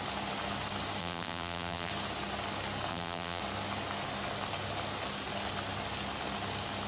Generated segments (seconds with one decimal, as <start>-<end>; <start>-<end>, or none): 1.0-1.9; 2.9-3.4